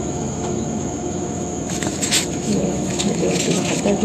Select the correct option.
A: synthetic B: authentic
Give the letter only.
A